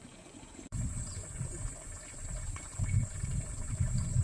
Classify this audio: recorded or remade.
remade